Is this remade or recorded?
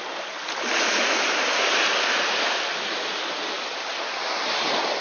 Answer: recorded